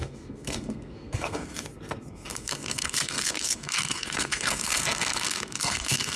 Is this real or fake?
fake